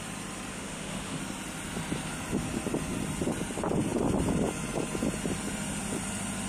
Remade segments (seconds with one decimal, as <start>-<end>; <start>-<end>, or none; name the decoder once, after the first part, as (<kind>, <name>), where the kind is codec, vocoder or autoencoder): 0.5-1.2 (autoencoder, DAC-VAE)